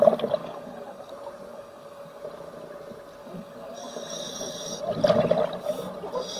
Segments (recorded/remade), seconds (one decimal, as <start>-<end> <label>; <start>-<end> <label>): 0.0-0.4 recorded; 0.4-1.1 remade; 1.1-1.5 recorded; 1.5-2.2 remade; 2.2-3.2 recorded; 3.2-4.8 remade; 4.8-6.4 recorded